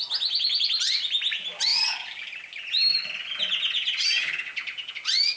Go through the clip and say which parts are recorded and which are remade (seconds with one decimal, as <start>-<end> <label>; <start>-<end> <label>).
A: 0.0-5.4 recorded